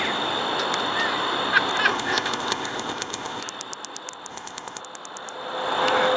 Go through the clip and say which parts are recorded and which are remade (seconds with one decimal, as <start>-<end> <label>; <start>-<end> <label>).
0.0-1.9 recorded; 1.9-3.4 remade; 3.4-4.3 recorded; 4.3-4.8 remade; 4.8-6.2 recorded

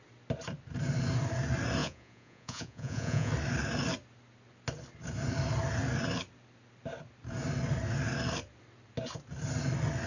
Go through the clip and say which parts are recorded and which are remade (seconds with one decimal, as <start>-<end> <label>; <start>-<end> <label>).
0.0-1.8 recorded; 1.8-3.3 remade; 3.3-10.1 recorded

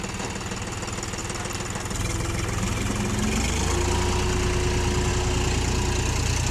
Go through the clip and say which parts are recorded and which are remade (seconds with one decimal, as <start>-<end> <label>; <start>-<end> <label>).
0.0-6.5 recorded

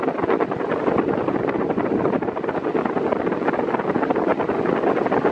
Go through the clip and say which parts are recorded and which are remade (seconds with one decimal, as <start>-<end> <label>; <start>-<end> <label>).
0.0-5.3 recorded

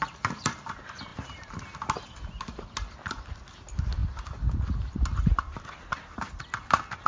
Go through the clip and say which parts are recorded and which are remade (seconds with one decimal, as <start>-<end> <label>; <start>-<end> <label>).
0.0-7.1 recorded

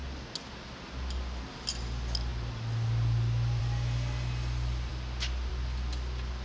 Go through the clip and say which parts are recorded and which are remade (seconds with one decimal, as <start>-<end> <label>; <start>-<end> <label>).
0.0-6.4 recorded

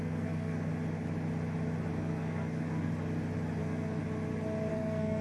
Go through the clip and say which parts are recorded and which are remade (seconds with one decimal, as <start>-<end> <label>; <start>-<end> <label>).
0.0-0.7 remade; 0.7-1.9 recorded; 1.9-2.9 remade; 2.9-3.6 recorded; 3.6-4.0 remade; 4.0-4.7 recorded; 4.7-5.2 remade

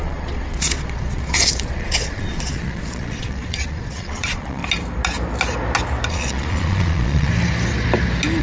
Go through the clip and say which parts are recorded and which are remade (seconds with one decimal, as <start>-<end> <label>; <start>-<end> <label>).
0.0-4.6 remade; 4.6-6.1 recorded; 6.1-7.3 remade; 7.3-8.4 recorded